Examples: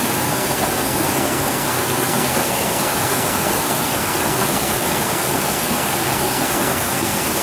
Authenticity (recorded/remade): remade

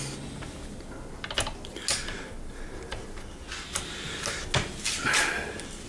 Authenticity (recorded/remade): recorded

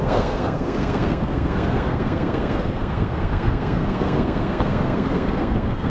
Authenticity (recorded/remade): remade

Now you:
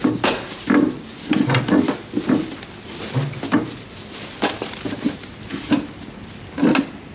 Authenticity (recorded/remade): recorded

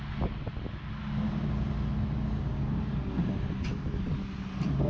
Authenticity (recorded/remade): recorded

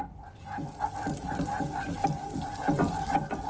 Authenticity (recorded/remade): recorded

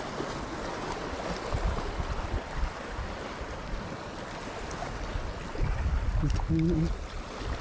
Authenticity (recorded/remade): recorded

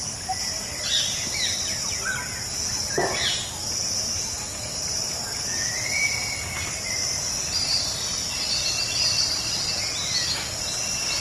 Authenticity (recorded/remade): recorded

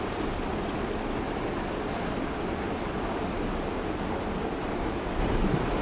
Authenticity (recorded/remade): recorded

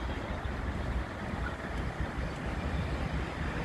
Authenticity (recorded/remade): recorded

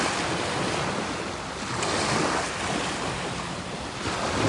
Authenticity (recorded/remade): recorded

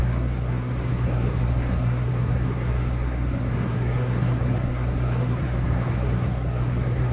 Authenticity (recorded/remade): remade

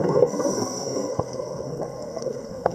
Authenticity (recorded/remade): remade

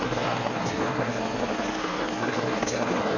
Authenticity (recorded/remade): remade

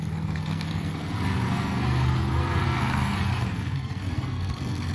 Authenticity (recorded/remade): remade